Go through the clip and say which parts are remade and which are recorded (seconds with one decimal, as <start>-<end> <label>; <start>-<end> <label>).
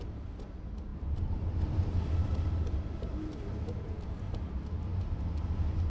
0.0-5.9 recorded